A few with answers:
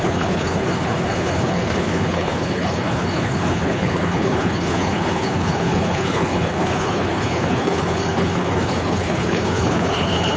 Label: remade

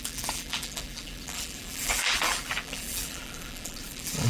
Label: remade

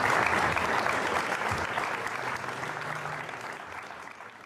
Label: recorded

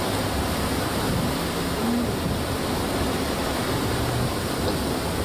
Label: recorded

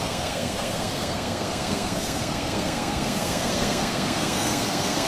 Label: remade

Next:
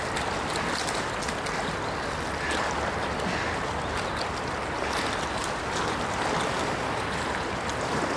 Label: recorded